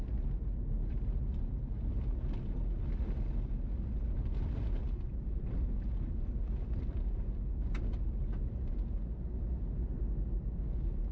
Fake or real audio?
real